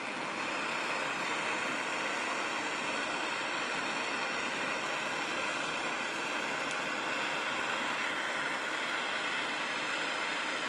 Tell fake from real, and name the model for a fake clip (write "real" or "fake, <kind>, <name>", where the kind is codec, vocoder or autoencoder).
real